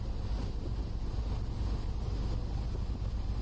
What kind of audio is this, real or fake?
real